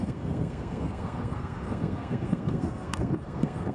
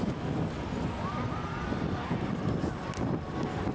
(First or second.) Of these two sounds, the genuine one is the second